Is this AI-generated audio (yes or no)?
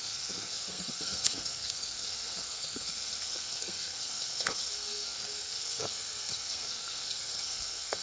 yes